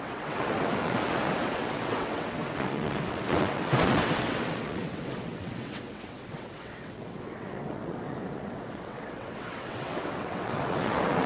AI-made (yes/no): yes